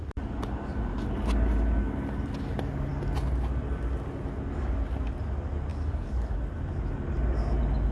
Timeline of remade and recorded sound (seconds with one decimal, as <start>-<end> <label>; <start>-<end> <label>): 0.0-5.7 recorded; 5.7-6.4 remade; 6.4-7.9 recorded